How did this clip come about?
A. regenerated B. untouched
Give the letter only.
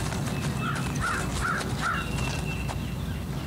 B